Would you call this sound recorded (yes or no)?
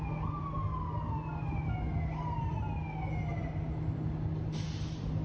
yes